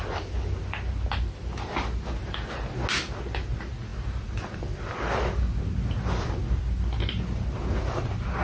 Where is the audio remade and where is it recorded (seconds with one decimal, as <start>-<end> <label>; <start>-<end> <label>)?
0.0-8.4 recorded